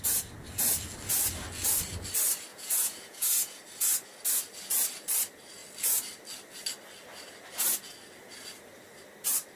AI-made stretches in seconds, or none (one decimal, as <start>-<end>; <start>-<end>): 2.5-3.6